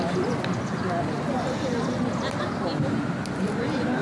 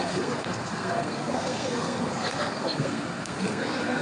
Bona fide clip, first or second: first